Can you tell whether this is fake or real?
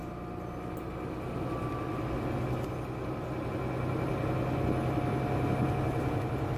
real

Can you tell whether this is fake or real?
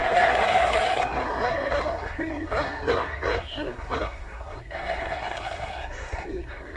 fake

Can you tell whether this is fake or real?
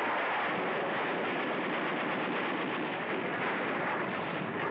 real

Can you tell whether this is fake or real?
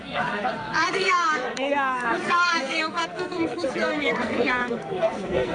fake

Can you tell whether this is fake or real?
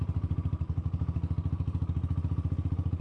real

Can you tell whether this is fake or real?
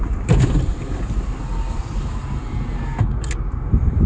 real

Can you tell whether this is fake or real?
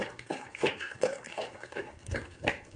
fake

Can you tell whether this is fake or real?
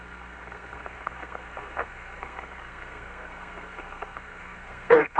fake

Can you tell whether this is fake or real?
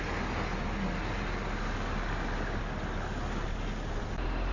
real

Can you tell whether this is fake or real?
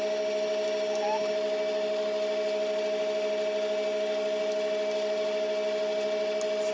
real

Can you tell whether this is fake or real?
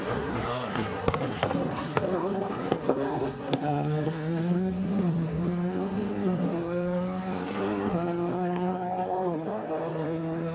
fake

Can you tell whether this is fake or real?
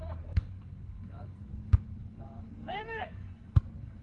fake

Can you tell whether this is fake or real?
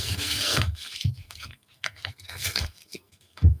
fake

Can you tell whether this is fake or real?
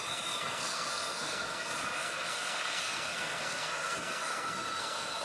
fake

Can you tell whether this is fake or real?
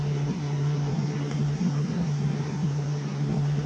fake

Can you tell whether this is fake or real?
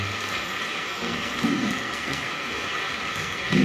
fake